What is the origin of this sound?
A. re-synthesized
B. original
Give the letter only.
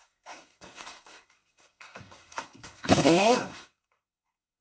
A